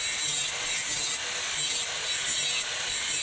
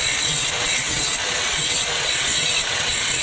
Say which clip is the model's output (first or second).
second